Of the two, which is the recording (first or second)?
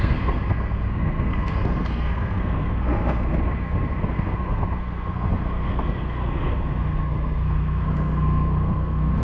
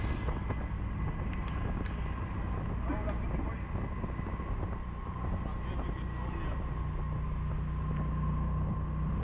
second